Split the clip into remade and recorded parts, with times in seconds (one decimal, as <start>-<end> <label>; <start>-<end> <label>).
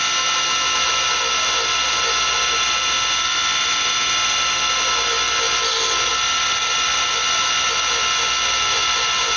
0.0-6.1 recorded; 6.1-7.4 remade; 7.4-9.4 recorded